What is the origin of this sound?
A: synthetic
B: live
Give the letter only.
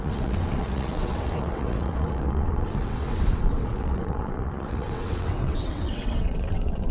A